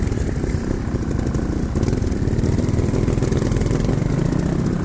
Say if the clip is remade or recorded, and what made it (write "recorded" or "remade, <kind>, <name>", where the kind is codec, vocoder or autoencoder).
recorded